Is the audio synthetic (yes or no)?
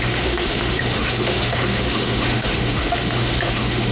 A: yes